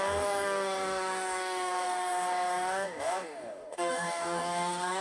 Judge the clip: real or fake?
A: fake